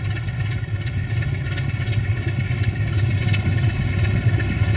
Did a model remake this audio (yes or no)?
no